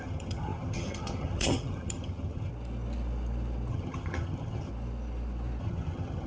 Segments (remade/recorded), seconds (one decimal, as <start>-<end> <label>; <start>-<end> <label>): 0.0-2.5 remade; 2.5-3.7 recorded; 3.7-4.7 remade; 4.7-5.6 recorded; 5.6-6.3 remade